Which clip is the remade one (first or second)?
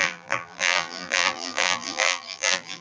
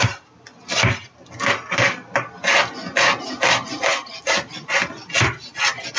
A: first